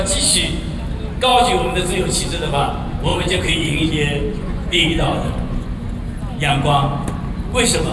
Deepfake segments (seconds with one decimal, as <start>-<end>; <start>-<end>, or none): 3.1-3.9; 4.3-5.8